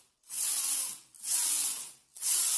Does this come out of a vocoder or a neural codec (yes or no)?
no